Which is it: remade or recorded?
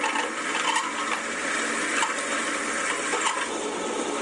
recorded